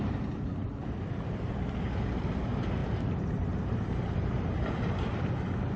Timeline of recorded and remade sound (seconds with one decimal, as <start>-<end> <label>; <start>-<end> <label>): 0.0-0.7 remade; 0.7-2.8 recorded; 2.8-5.3 remade; 5.3-5.8 recorded

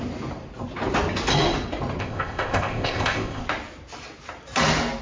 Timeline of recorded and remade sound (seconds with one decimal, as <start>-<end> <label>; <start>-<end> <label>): 0.0-2.0 recorded; 2.0-3.4 remade; 3.4-5.0 recorded